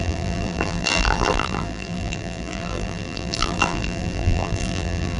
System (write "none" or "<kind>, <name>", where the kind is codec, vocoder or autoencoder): vocoder, BigVGAN v2